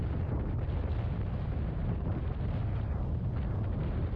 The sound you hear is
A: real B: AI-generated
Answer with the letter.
A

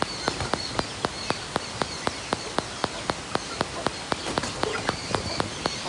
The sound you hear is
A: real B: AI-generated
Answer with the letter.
A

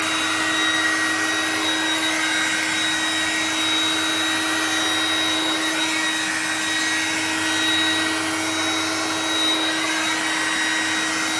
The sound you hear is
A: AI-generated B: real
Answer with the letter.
B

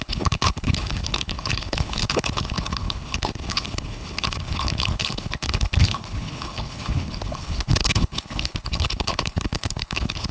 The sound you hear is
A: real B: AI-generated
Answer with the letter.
B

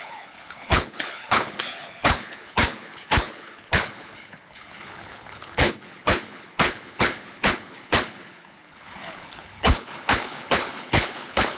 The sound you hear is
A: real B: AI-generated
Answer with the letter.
B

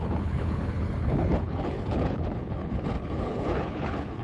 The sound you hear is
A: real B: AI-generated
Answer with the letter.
B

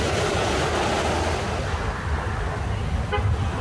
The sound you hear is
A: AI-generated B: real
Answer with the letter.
B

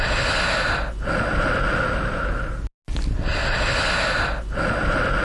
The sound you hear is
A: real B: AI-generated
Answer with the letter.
A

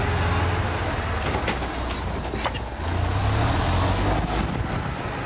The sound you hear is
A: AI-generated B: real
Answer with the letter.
B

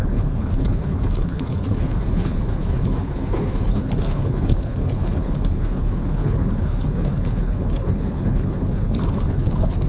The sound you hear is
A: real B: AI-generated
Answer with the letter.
B